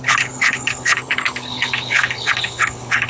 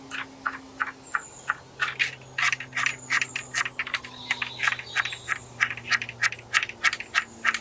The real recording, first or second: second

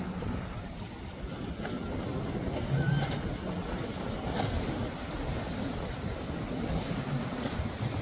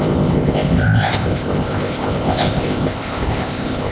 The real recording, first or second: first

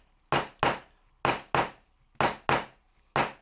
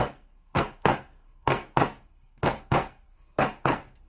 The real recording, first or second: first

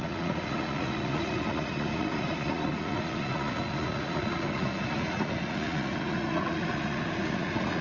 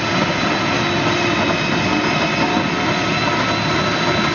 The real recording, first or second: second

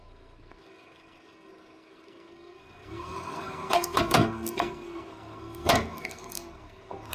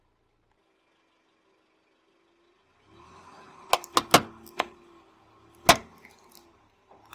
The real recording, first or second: second